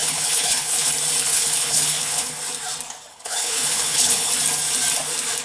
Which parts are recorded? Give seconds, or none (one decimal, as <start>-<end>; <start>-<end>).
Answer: 0.9-1.3; 2.3-3.1; 4.3-5.4